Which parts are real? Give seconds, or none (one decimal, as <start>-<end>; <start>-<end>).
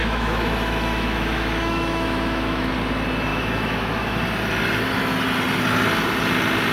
2.7-3.3; 4.2-6.7